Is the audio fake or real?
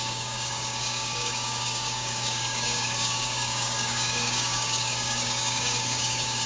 fake